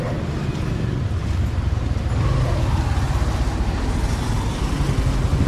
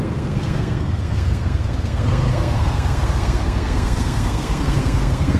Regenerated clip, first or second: second